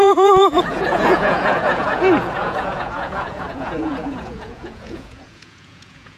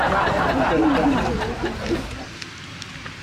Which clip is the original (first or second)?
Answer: second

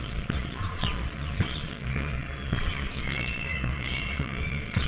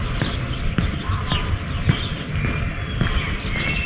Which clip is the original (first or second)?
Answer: second